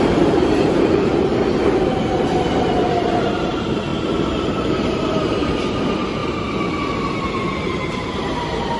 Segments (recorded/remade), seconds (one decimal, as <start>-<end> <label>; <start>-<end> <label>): 0.0-1.1 remade; 1.1-3.2 recorded; 3.2-3.9 remade; 3.9-4.4 recorded; 4.4-6.2 remade; 6.2-7.3 recorded; 7.3-8.8 remade